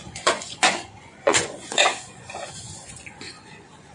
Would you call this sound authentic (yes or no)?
no